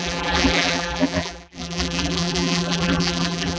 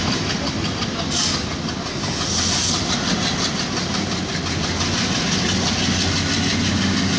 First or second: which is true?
second